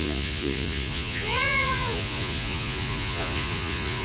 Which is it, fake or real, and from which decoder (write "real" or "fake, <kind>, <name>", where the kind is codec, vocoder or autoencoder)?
fake, vocoder, Vocos